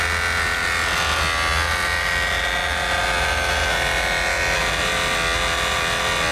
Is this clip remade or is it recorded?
recorded